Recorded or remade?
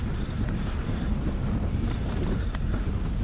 remade